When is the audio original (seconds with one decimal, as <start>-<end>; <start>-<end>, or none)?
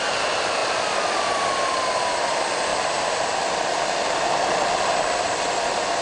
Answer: 0.0-2.7; 3.5-6.0